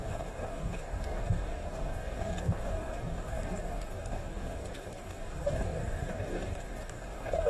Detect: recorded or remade remade